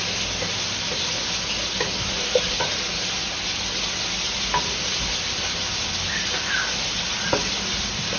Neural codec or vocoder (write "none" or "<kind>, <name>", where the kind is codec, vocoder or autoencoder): none